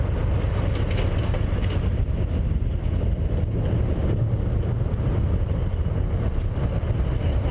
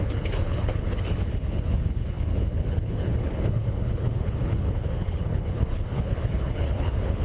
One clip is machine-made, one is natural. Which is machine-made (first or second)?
second